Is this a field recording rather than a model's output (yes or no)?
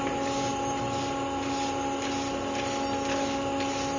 yes